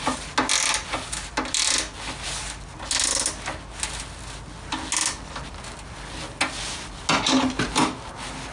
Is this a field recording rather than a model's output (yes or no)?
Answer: yes